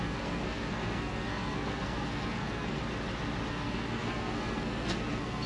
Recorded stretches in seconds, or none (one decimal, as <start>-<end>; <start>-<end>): 2.8-3.5